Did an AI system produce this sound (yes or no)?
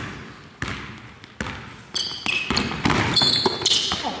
no